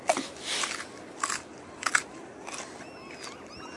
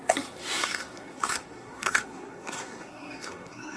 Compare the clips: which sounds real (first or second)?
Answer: first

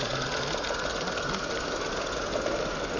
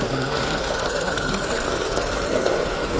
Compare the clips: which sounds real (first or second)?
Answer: first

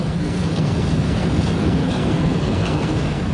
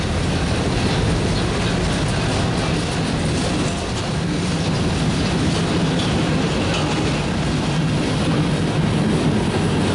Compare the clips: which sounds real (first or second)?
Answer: second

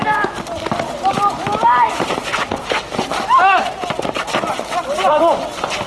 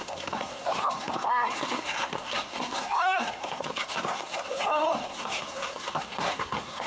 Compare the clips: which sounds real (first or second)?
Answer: first